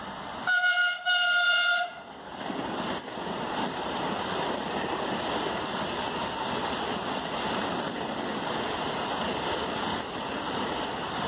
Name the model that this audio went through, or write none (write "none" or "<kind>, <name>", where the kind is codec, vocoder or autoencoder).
none